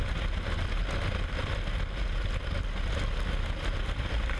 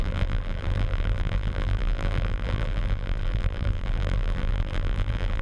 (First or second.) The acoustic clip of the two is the first